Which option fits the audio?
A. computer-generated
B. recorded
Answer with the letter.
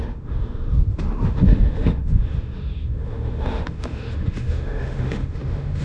A